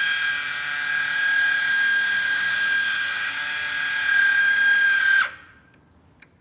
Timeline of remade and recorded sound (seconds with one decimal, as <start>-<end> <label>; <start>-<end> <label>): 0.0-1.7 recorded; 1.7-3.3 remade; 3.3-4.4 recorded; 4.4-5.0 remade; 5.0-6.4 recorded